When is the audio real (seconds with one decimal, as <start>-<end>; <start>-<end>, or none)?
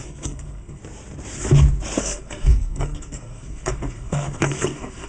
0.8-2.0